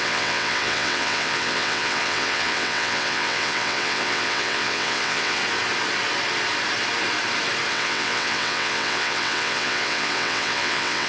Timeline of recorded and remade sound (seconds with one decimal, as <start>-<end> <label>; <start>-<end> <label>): 0.0-5.4 remade; 5.4-7.7 recorded; 7.7-11.1 remade